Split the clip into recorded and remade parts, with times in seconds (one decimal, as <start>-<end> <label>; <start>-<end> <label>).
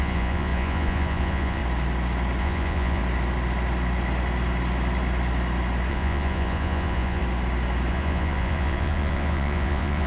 0.0-1.6 remade; 1.6-2.4 recorded; 2.4-3.0 remade; 3.0-5.9 recorded; 5.9-7.2 remade; 7.2-7.9 recorded; 7.9-10.1 remade